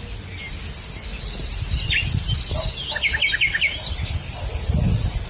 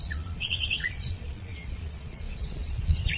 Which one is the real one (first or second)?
first